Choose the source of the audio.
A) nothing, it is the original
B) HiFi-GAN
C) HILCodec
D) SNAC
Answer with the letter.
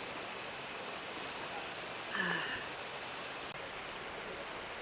A